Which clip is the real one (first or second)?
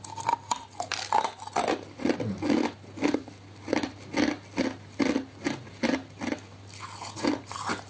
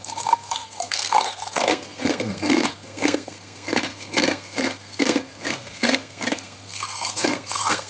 first